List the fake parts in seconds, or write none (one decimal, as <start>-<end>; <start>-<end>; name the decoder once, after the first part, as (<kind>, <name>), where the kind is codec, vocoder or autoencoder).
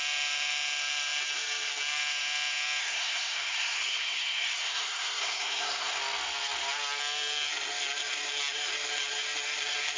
2.8-6.0 (codec, SNAC)